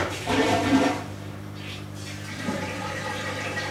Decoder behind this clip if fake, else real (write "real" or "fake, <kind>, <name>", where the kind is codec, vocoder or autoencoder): fake, vocoder, BigVGAN v2